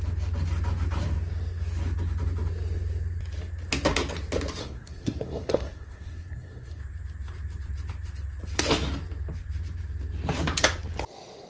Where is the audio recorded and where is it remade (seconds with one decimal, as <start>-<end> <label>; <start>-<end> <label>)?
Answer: 0.0-4.6 recorded; 4.6-6.8 remade; 6.8-11.5 recorded